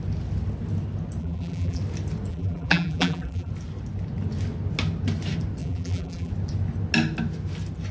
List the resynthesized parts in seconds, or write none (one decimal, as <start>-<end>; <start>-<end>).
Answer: 1.2-1.8; 2.3-3.5; 5.6-6.3

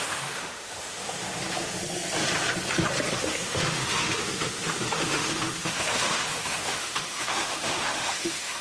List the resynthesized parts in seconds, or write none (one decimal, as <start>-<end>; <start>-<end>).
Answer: 0.0-1.8; 3.1-8.6